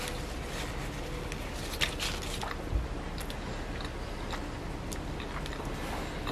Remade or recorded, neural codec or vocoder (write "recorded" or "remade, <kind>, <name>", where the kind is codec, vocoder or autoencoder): recorded